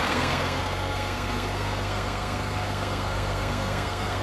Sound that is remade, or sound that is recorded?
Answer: remade